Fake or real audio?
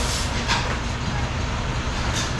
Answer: real